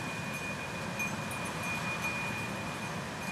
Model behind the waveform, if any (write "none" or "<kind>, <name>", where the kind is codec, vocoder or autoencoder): none